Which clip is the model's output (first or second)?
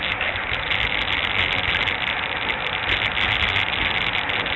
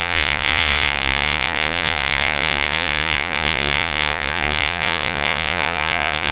second